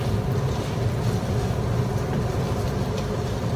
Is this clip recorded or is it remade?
recorded